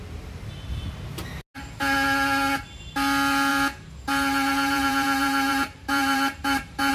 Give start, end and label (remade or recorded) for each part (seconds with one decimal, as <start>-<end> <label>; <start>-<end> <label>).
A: 0.0-3.5 recorded; 3.5-6.9 remade